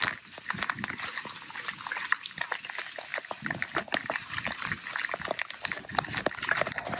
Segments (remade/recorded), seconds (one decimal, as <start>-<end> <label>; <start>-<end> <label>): 0.0-3.1 recorded; 3.1-4.7 remade; 4.7-5.9 recorded; 5.9-7.0 remade

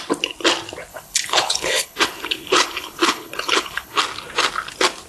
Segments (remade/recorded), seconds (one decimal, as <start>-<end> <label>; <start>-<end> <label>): 0.0-0.9 recorded; 0.9-4.0 remade; 4.0-5.1 recorded

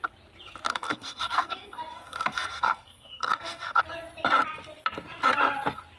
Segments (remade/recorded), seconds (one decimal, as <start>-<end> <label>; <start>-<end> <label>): 0.0-0.7 recorded; 0.7-3.8 remade; 3.8-6.0 recorded

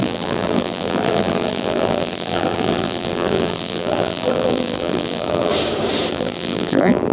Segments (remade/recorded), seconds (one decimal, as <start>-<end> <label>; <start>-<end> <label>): 0.0-5.5 remade; 5.5-6.1 recorded; 6.1-7.1 remade